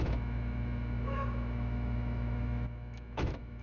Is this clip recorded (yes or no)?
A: no